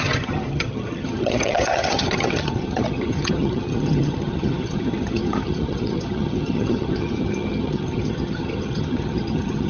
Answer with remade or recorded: remade